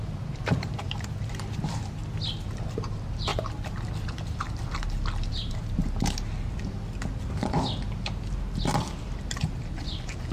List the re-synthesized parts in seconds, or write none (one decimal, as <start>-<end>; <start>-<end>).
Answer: 0.0-2.0; 2.6-3.3; 5.3-5.8; 9.7-10.3